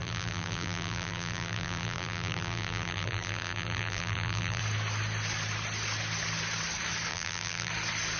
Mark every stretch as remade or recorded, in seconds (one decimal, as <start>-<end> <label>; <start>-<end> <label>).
0.0-4.6 remade; 4.6-7.1 recorded; 7.1-7.7 remade; 7.7-8.2 recorded